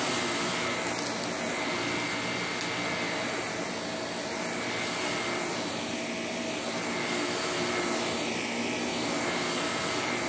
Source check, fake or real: real